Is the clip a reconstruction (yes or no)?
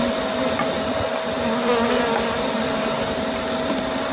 no